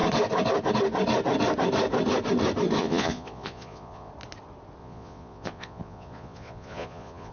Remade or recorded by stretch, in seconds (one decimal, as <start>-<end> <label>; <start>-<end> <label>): 0.0-2.8 recorded; 2.8-4.1 remade; 4.1-4.8 recorded; 4.8-7.3 remade